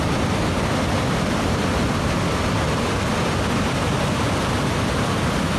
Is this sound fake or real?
real